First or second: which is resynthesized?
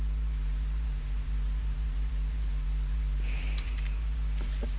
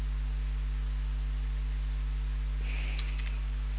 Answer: first